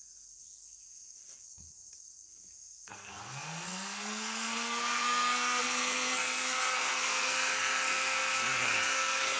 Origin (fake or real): fake